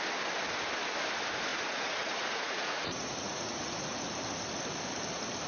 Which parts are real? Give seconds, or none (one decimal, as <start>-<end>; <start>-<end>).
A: 0.0-1.5; 4.0-5.5